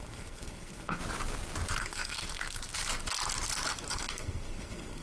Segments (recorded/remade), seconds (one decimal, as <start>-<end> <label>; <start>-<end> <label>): 0.0-1.0 remade; 1.0-1.8 recorded; 1.8-2.4 remade; 2.4-3.9 recorded; 3.9-5.0 remade